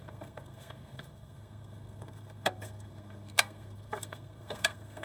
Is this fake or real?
fake